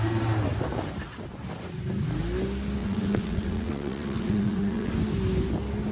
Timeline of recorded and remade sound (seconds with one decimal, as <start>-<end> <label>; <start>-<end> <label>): 0.0-2.8 recorded; 2.8-4.9 remade; 4.9-5.9 recorded